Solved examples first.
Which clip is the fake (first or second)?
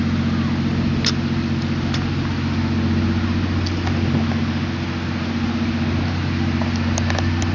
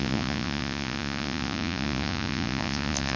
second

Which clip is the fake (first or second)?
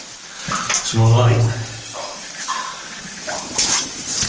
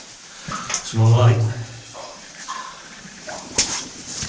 second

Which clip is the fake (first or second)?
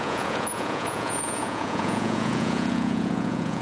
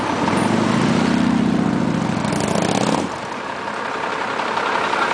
first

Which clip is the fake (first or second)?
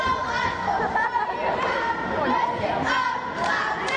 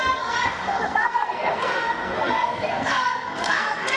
second